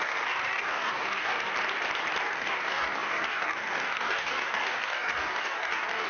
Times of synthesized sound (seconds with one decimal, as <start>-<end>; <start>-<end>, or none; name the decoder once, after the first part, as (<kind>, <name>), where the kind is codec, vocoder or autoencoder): 0.0-1.5 (codec, DAC); 2.2-6.1